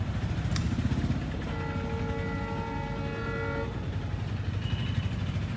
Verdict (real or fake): real